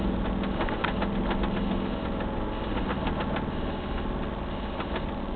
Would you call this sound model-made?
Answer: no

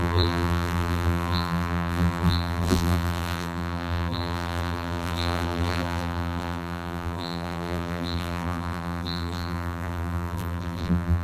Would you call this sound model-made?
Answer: yes